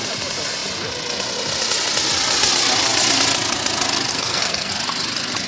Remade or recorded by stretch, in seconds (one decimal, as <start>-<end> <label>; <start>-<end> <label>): 0.0-4.1 recorded; 4.1-4.7 remade; 4.7-5.5 recorded